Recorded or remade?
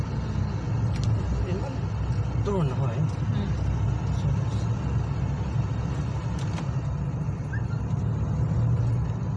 recorded